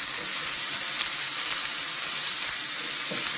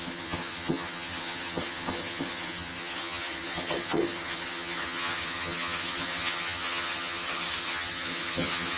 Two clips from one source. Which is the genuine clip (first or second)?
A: first